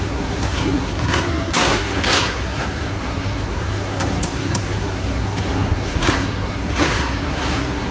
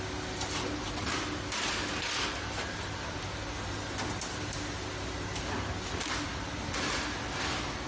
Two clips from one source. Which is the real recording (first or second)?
second